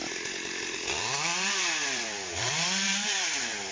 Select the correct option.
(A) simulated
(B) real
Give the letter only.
A